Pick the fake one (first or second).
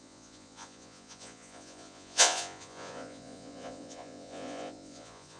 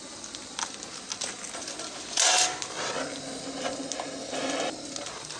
first